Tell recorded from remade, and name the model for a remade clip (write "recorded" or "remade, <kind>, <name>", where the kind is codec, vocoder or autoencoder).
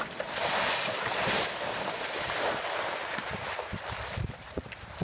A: remade, vocoder, BigVGAN v2